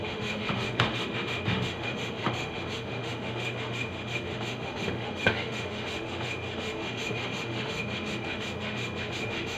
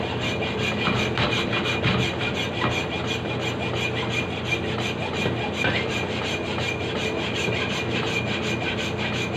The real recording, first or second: second